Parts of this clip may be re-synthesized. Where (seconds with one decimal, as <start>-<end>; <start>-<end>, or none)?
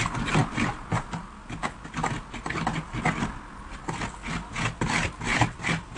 5.3-6.0